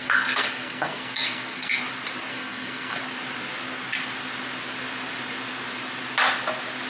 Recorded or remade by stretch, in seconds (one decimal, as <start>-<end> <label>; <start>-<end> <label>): 0.0-1.8 remade; 1.8-2.3 recorded; 2.3-3.0 remade; 3.0-6.9 recorded